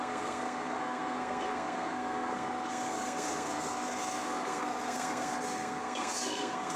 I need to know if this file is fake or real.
fake